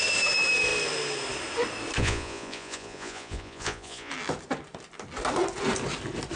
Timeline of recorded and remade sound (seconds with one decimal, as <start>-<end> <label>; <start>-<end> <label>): 0.0-2.0 recorded; 2.0-4.1 remade; 4.1-6.4 recorded